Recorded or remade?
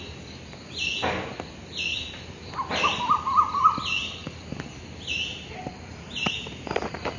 recorded